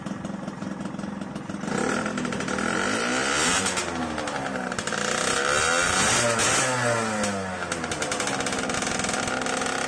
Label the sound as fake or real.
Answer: real